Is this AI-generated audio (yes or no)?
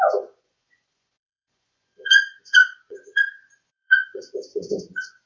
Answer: yes